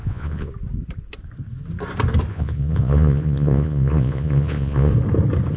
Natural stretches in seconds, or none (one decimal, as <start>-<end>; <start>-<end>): 0.5-2.3; 4.9-5.6